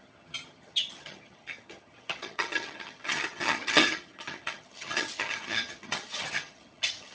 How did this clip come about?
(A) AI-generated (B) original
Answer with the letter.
A